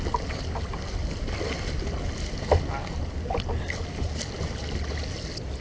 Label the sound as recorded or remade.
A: recorded